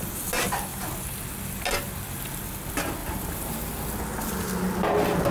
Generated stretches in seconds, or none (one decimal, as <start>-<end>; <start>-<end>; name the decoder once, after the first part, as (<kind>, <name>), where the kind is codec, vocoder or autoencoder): 3.0-3.6 (vocoder, BigVGAN v2)